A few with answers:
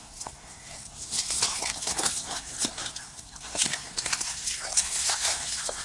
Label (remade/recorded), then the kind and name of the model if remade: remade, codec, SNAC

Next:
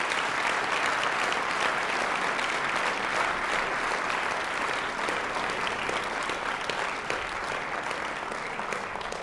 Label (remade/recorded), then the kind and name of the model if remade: recorded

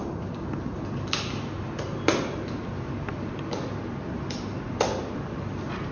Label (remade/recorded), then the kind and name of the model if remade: recorded